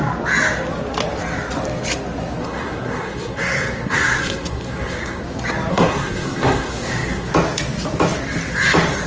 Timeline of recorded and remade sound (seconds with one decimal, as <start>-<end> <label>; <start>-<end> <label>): 0.0-2.4 recorded; 2.4-5.2 remade; 5.2-5.7 recorded; 5.7-7.3 remade; 7.3-9.1 recorded